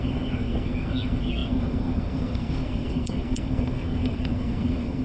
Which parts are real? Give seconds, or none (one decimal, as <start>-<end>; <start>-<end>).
none